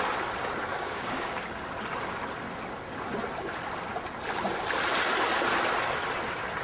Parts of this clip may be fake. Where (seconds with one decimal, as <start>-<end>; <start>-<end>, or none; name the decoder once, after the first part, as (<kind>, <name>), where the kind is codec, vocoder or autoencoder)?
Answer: 0.7-1.5 (codec, DAC)